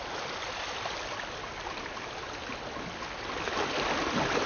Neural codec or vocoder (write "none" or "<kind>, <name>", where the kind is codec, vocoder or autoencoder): none